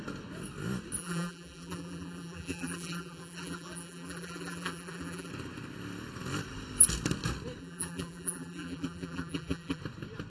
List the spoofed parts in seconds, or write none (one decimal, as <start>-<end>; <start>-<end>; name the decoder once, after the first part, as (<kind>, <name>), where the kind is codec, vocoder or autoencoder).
1.0-5.3 (vocoder, BigVGAN v2); 7.6-9.8